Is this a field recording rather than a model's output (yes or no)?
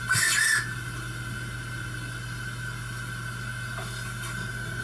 yes